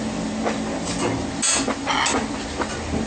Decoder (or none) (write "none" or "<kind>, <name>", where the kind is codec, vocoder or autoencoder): none